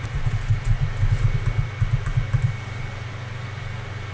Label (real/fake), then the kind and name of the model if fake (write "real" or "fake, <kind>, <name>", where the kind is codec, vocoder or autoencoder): real